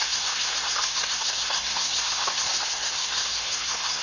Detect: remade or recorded remade